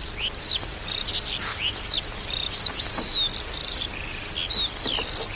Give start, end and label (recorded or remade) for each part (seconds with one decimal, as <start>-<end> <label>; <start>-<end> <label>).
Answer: 0.0-1.5 recorded; 1.5-2.9 remade; 2.9-5.4 recorded